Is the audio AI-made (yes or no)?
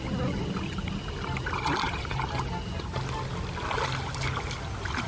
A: no